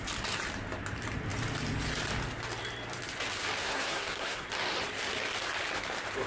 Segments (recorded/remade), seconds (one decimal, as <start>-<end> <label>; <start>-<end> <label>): 0.0-3.6 recorded; 3.6-4.5 remade; 4.5-6.3 recorded